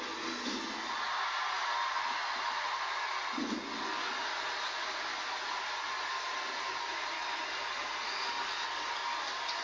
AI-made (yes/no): no